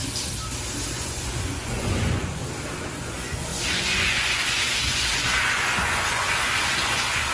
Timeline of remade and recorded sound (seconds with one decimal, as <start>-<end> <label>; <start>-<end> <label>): 0.0-0.9 recorded; 0.9-2.4 remade; 2.4-2.9 recorded; 2.9-7.3 remade

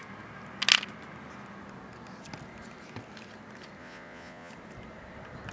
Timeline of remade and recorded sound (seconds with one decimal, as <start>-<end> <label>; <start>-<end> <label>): 0.0-3.8 recorded; 3.8-4.5 remade; 4.5-5.5 recorded